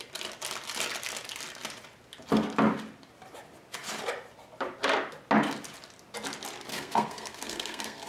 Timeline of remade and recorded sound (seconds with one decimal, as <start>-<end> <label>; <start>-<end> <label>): 0.0-6.7 recorded; 6.7-8.1 remade